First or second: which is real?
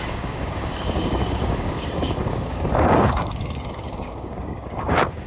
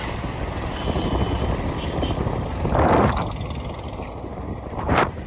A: second